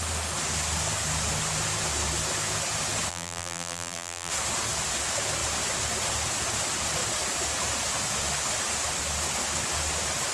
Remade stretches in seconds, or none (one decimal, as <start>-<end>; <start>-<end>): 3.1-4.3